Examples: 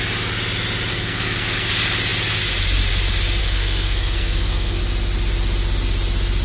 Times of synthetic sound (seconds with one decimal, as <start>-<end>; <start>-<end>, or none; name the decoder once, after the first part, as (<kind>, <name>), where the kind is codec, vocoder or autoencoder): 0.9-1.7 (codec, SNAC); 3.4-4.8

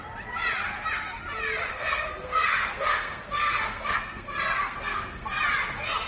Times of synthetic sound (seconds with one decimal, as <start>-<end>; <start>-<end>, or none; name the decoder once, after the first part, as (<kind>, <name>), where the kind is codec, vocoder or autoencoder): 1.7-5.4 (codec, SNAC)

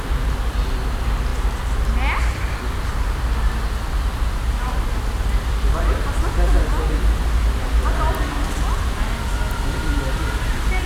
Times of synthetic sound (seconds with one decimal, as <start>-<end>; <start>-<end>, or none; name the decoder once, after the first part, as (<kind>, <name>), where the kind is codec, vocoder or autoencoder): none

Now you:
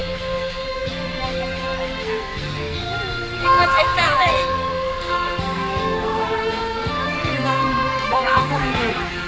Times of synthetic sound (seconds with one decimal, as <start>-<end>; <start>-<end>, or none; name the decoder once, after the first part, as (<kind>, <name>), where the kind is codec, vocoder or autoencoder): 0.0-2.8 (codec, SNAC); 3.4-9.3